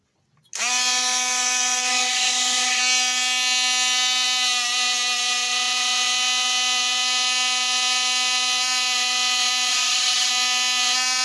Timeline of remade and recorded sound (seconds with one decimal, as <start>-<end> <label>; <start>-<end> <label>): 0.0-1.9 recorded; 1.9-2.8 remade; 2.8-9.7 recorded; 9.7-10.3 remade; 10.3-11.2 recorded